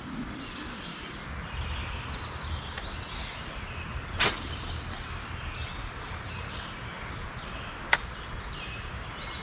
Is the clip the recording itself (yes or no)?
yes